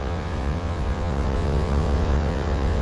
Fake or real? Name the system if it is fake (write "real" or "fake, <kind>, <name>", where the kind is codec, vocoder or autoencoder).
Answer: fake, vocoder, WaveNeXt